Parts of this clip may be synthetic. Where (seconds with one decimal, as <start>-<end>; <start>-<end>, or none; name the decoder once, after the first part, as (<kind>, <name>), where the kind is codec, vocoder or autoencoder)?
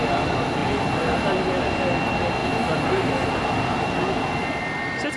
none